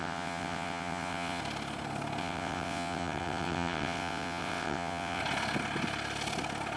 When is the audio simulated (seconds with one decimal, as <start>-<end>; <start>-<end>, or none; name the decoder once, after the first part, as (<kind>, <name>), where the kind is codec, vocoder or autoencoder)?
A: 0.0-1.4 (vocoder, WaveNeXt); 2.2-5.2